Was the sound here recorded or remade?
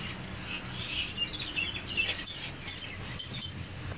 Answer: recorded